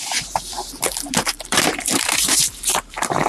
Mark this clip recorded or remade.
remade